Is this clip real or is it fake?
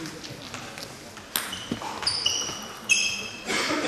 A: real